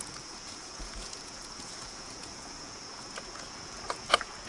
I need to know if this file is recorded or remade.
remade